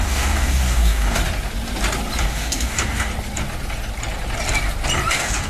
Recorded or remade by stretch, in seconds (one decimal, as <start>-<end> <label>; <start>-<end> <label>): 0.0-1.2 remade; 1.2-2.2 recorded; 2.2-3.1 remade; 3.1-5.1 recorded; 5.1-5.5 remade